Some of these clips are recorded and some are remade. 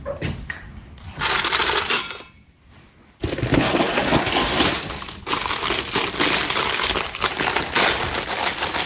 recorded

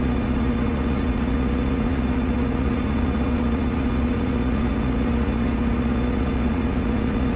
remade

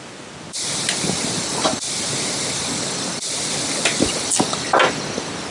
recorded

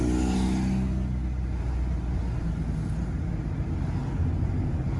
recorded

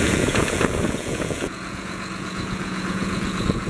remade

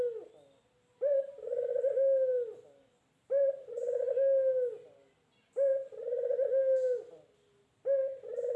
recorded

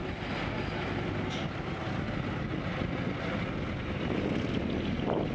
recorded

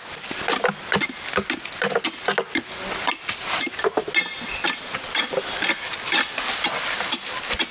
recorded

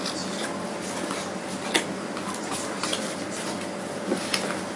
recorded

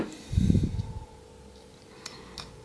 recorded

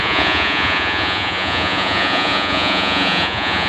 remade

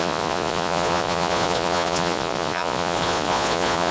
remade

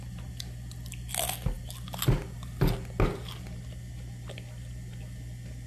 recorded